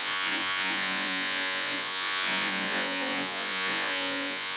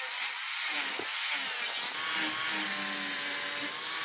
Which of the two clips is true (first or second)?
second